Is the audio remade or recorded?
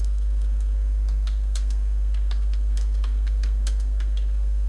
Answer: remade